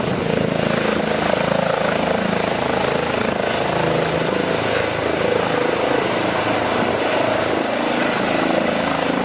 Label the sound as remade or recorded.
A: recorded